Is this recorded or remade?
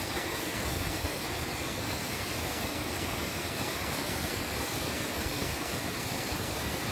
remade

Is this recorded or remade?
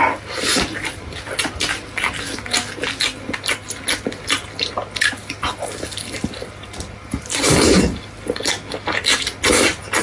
recorded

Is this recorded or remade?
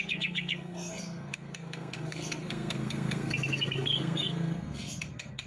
remade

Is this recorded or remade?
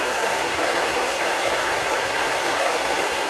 remade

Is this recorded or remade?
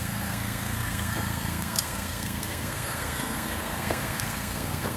remade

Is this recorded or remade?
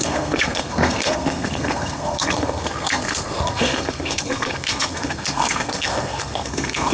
remade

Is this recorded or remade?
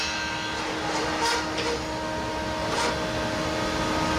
recorded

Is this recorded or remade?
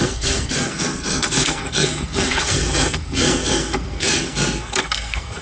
remade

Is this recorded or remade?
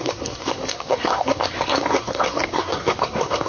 remade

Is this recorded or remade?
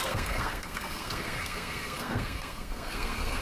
remade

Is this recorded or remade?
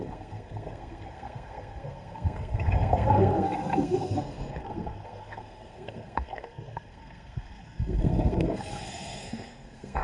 remade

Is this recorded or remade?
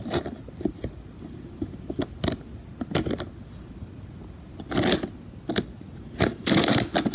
recorded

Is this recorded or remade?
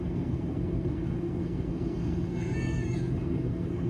remade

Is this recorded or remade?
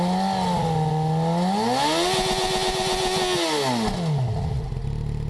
recorded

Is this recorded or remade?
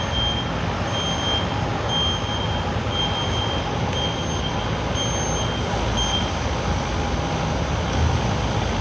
recorded